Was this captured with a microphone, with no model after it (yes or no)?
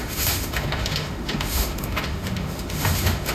no